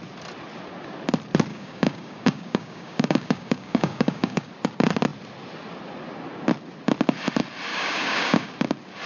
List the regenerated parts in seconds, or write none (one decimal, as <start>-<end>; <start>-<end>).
1.5-4.5; 7.7-8.5